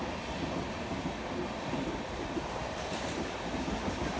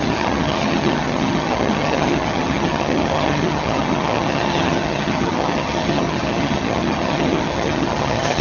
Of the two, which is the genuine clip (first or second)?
first